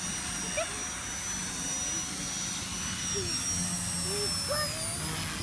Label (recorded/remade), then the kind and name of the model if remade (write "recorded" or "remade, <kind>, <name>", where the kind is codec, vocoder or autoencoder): recorded